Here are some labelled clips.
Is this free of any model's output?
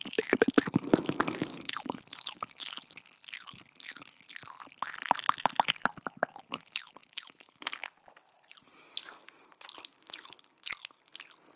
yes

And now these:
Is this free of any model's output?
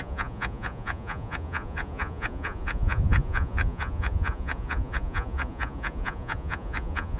no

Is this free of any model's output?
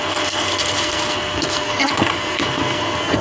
no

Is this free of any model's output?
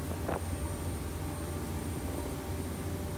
yes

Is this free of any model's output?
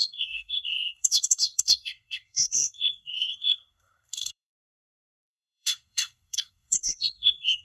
no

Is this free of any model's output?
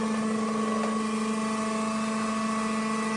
yes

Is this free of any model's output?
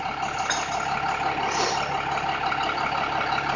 yes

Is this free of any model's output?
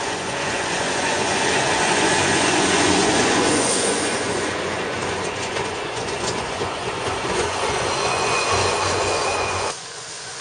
no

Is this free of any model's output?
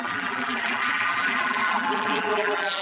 no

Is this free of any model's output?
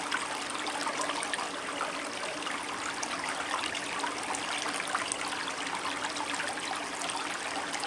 yes